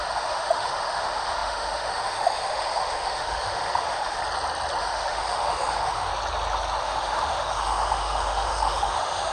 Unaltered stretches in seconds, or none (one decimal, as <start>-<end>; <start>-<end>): 4.2-4.8; 6.1-6.8